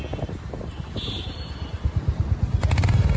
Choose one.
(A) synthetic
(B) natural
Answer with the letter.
B